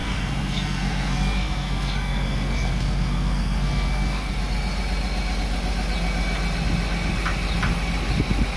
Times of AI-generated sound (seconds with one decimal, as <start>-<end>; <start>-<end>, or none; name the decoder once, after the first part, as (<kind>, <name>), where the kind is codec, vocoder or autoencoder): 0.0-4.3 (codec, SNAC)